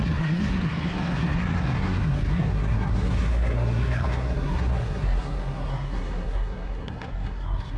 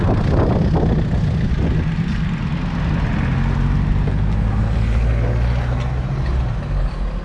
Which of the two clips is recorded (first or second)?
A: second